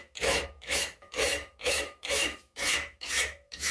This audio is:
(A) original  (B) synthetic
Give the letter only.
B